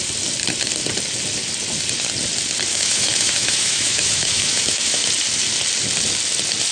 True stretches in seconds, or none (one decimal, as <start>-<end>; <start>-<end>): 0.0-2.7; 5.1-6.7